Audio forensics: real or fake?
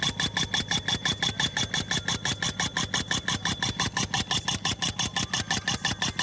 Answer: real